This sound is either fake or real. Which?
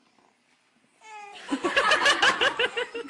real